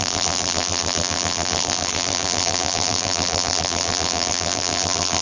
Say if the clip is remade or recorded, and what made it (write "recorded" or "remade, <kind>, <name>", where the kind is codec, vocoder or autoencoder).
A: remade, vocoder, BigVGAN v2